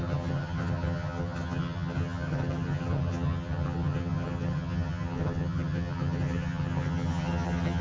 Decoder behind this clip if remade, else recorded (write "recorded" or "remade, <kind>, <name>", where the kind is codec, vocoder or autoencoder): remade, vocoder, HiFi-GAN